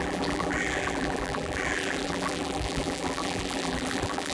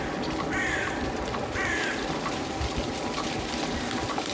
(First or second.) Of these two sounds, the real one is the second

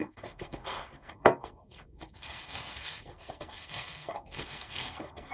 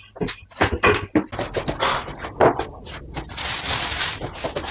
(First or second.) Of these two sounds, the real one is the second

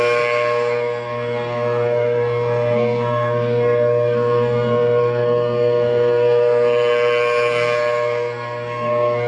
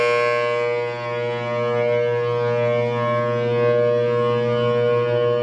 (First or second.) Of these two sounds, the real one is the second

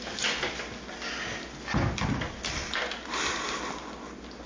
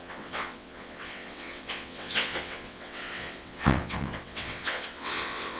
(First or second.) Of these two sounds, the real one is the first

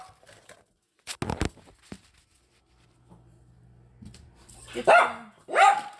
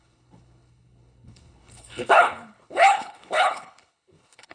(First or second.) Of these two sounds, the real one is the first